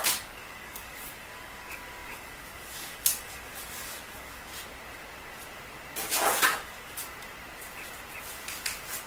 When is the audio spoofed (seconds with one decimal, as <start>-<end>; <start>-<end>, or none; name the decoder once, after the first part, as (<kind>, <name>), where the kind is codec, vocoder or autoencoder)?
0.0-4.5 (codec, DAC); 6.1-7.0

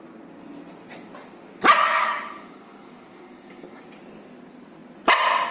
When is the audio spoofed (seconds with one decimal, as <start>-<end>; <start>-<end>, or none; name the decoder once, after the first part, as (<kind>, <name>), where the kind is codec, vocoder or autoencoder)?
1.8-3.8 (codec, DAC)

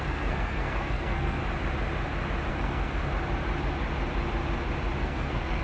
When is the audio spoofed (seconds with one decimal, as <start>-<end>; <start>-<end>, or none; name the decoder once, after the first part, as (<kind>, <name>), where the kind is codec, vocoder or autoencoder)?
0.0-1.4 (codec, SNAC); 2.5-3.0; 5.0-5.6

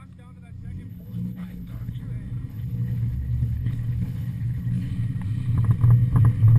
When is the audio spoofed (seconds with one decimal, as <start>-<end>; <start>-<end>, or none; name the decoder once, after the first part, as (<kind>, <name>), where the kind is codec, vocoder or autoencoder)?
0.9-2.0 (codec, HILCodec); 2.5-4.9

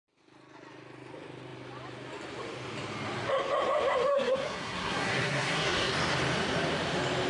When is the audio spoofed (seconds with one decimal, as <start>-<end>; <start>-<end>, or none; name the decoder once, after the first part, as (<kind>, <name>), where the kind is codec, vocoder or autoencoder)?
4.1-5.9 (codec, SNAC)

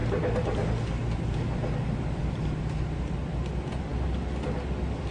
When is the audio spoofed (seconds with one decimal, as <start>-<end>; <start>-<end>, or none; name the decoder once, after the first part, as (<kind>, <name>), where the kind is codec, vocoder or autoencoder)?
none

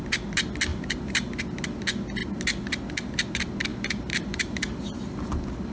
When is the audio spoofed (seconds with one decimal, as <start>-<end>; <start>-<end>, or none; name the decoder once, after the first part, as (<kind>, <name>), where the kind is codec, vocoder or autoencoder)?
0.7-1.6 (vocoder, BigVGAN v2); 3.7-4.7